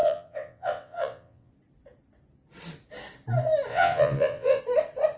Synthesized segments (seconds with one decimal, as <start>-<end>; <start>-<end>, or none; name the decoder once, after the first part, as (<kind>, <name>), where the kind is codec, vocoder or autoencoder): 0.0-1.5 (vocoder, WaveNeXt); 3.7-4.6